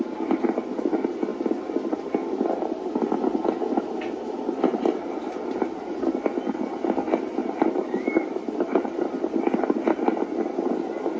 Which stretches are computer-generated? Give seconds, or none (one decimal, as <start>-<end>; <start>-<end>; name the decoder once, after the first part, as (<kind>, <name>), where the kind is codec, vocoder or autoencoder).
4.7-5.9 (vocoder, BigVGAN v2); 7.4-10.4